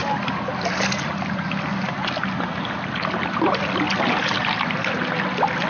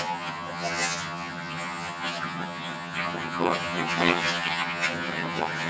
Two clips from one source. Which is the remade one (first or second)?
second